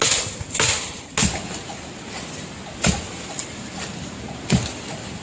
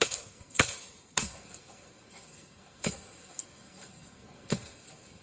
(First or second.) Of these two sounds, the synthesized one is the second